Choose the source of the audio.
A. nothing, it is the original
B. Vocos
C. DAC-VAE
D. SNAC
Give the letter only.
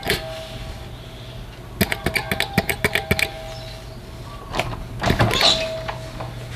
A